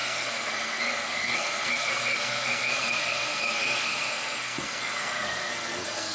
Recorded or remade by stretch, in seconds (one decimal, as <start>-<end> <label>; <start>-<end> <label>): 0.0-6.1 remade